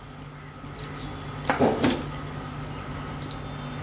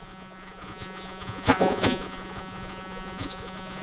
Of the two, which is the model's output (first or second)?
second